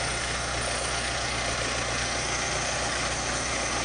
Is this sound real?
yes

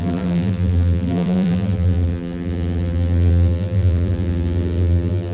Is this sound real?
no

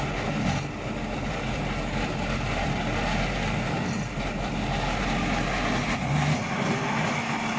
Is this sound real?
yes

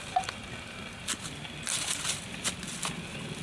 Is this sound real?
yes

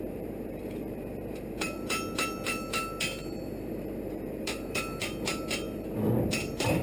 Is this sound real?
no